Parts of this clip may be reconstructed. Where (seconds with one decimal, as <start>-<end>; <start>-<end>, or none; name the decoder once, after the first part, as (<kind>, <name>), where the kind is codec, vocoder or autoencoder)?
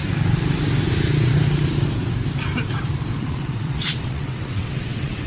3.2-5.3 (vocoder, WaveNeXt)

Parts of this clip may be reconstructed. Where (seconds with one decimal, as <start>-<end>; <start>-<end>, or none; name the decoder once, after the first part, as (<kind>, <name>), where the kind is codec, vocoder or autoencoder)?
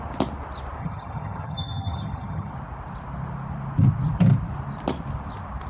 0.8-2.5 (vocoder, HiFi-GAN)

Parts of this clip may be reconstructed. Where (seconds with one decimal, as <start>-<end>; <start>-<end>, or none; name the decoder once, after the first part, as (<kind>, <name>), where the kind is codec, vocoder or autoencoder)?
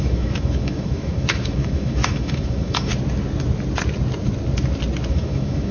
0.0-2.9 (autoencoder, DAC-VAE); 5.1-5.7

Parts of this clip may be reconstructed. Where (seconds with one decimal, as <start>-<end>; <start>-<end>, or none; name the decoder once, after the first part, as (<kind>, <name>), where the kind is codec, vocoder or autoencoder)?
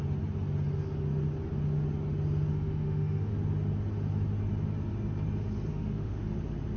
2.5-3.3 (autoencoder, DAC-VAE); 5.7-6.2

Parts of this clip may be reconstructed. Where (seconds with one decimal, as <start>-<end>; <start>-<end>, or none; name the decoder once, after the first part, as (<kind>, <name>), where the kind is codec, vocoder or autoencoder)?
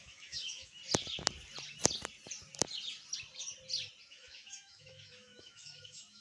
0.0-0.8 (autoencoder, DAC-VAE); 4.1-6.2